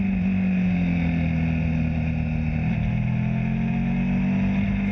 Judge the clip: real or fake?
real